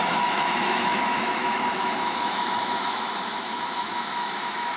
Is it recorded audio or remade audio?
remade